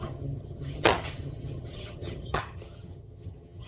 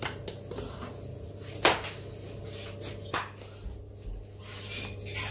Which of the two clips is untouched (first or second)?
second